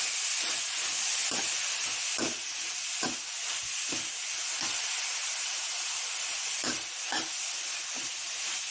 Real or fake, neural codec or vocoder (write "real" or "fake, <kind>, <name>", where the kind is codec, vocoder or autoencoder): real